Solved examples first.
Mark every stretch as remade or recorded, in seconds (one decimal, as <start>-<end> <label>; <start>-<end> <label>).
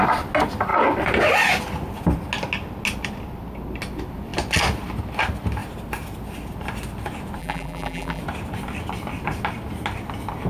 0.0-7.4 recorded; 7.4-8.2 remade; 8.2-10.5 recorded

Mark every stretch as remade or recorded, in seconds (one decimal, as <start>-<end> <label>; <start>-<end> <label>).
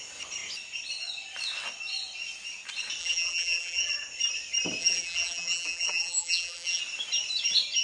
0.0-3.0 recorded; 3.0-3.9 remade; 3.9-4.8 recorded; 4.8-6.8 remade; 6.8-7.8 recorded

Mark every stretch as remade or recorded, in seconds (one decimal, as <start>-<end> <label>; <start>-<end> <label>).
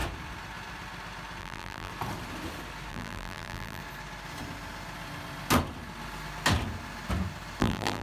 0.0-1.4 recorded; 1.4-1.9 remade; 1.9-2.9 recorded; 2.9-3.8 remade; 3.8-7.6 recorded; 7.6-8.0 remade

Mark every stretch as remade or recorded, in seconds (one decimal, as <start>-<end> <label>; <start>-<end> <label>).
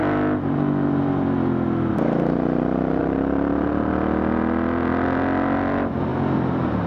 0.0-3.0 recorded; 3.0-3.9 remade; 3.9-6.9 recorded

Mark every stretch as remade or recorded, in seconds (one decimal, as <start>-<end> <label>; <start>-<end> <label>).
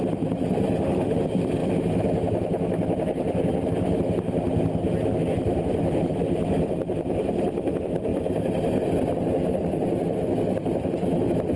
0.0-1.6 remade; 1.6-5.2 recorded; 5.2-6.2 remade; 6.2-6.7 recorded; 6.7-11.6 remade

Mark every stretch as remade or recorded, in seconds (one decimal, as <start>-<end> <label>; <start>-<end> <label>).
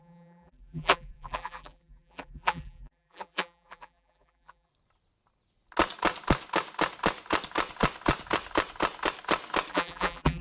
0.0-4.7 remade; 4.7-9.7 recorded; 9.7-10.4 remade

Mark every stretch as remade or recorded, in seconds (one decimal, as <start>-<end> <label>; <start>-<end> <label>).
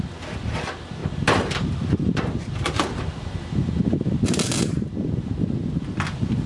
0.0-1.0 recorded; 1.0-4.9 remade; 4.9-6.5 recorded